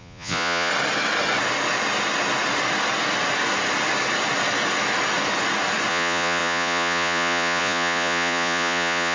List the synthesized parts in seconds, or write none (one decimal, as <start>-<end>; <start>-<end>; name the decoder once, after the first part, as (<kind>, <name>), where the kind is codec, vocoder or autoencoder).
0.0-0.7 (vocoder, Vocos); 5.9-9.1